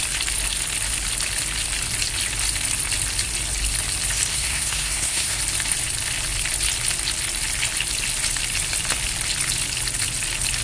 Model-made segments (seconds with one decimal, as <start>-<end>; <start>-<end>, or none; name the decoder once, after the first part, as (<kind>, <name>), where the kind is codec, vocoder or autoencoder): 4.3-5.4 (codec, SNAC)